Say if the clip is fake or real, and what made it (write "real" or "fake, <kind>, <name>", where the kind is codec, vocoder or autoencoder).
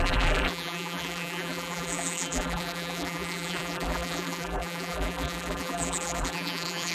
fake, vocoder, BigVGAN v2